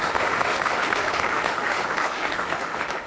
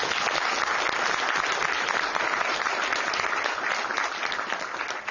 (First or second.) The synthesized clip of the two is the first